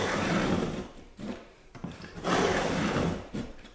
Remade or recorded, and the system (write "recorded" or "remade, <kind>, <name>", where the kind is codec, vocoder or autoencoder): remade, vocoder, BigVGAN v2